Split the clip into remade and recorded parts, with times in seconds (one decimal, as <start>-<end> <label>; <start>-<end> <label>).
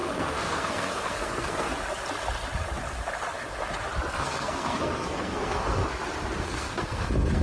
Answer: 0.0-1.7 remade; 1.7-4.2 recorded; 4.2-5.8 remade; 5.8-6.4 recorded; 6.4-7.4 remade